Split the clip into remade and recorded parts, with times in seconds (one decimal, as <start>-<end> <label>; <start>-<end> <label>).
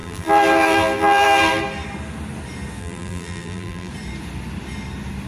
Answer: 0.0-1.6 remade; 1.6-2.8 recorded; 2.8-3.9 remade; 3.9-5.3 recorded